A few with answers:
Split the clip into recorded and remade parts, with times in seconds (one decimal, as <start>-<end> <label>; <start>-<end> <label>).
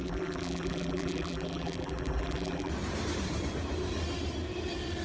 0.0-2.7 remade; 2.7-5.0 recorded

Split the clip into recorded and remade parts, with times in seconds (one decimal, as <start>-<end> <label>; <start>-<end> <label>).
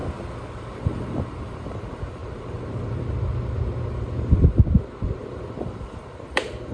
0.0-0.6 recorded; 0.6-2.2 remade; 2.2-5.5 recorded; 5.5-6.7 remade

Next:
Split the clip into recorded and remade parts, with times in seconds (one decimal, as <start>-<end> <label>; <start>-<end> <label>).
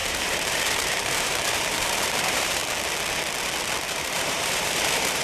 0.0-2.6 remade; 2.6-3.9 recorded; 3.9-5.2 remade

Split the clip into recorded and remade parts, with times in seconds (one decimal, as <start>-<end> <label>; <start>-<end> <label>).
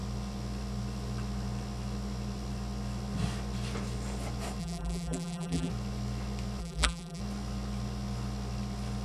0.0-4.6 recorded; 4.6-5.7 remade; 5.7-6.6 recorded; 6.6-7.2 remade; 7.2-9.0 recorded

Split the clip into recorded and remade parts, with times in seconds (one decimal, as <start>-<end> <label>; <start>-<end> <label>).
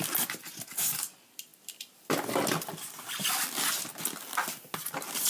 0.0-5.3 recorded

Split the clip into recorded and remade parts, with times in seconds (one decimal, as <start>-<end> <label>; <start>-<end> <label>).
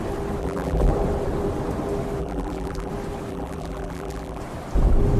0.0-0.4 recorded; 0.4-0.9 remade; 0.9-2.2 recorded; 2.2-2.9 remade; 2.9-3.3 recorded; 3.3-4.4 remade; 4.4-5.2 recorded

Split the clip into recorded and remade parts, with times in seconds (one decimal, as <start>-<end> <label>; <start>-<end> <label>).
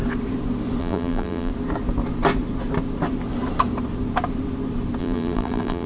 0.0-0.8 recorded; 0.8-1.5 remade; 1.5-5.0 recorded; 5.0-5.9 remade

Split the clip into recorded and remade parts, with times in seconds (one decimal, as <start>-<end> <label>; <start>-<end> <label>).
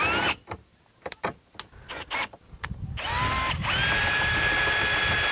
0.0-5.3 recorded